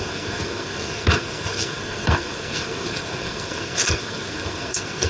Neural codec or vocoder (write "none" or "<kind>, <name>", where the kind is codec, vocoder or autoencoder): codec, SNAC